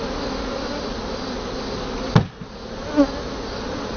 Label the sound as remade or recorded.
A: recorded